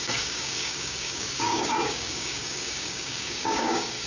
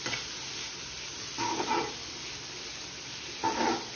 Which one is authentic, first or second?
second